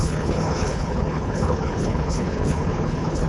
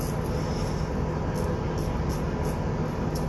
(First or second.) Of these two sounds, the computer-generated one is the first